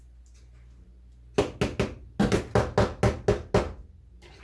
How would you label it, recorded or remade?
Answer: recorded